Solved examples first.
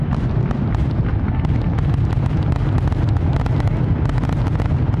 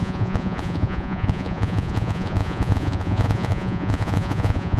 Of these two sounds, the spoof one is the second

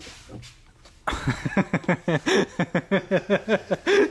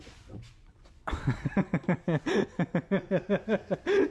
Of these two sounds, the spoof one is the second